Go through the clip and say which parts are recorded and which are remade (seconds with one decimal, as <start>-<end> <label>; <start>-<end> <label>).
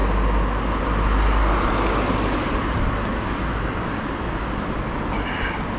0.0-5.8 recorded